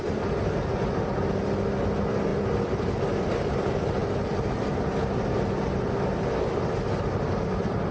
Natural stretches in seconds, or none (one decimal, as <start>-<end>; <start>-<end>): 0.0-7.9